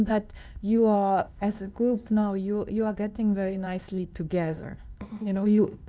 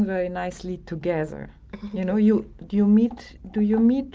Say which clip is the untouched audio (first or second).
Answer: second